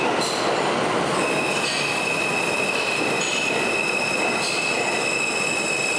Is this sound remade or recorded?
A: recorded